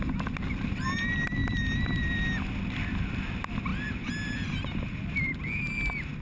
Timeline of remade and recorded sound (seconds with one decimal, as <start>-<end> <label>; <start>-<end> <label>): 0.0-6.2 recorded